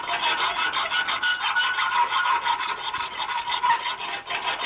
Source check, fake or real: real